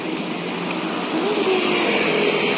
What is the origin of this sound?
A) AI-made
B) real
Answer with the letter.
B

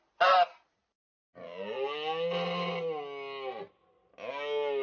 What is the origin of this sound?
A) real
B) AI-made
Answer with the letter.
A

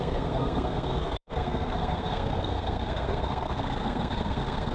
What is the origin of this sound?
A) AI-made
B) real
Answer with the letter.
A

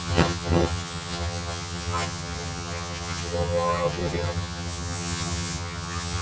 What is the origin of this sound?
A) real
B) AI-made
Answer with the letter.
B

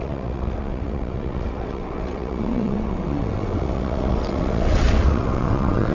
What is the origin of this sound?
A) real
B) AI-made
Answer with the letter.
B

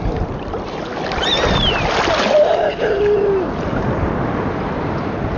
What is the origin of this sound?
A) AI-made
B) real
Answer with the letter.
B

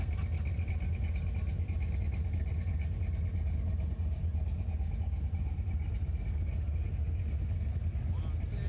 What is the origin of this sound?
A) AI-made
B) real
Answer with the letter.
B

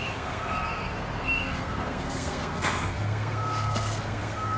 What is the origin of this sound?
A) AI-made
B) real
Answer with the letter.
A